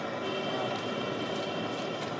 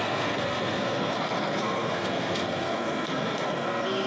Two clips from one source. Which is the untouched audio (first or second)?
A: first